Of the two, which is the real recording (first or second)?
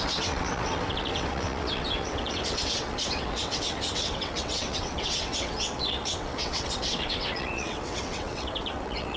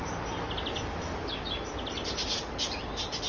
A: second